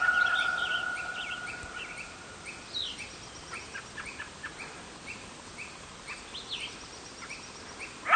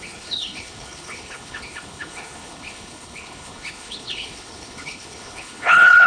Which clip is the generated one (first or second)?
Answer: second